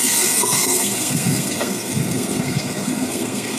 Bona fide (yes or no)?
no